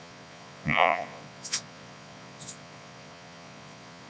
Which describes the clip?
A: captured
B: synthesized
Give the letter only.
B